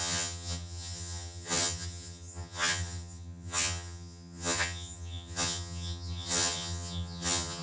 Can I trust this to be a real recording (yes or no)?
no